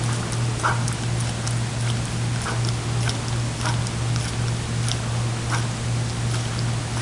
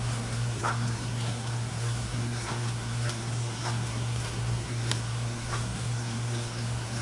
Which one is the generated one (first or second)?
second